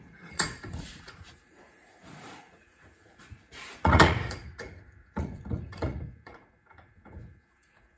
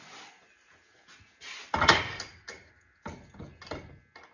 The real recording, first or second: second